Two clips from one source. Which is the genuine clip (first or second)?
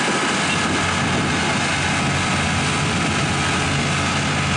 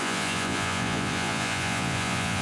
first